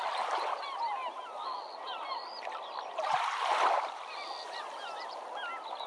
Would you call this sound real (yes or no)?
yes